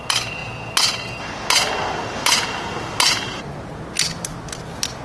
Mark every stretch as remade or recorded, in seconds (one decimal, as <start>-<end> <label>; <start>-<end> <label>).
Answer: 0.0-5.0 recorded